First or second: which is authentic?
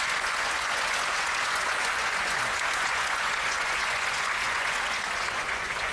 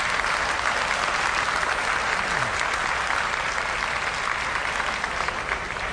second